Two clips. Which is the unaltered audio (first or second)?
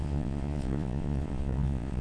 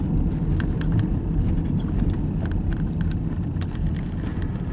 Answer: second